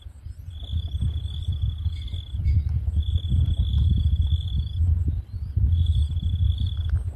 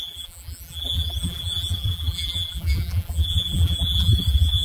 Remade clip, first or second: second